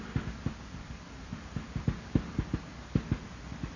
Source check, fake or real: real